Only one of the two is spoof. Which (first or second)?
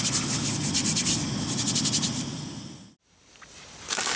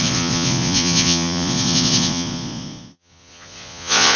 second